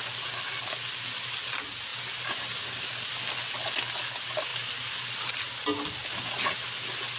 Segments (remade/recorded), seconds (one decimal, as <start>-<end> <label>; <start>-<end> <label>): 0.0-7.2 recorded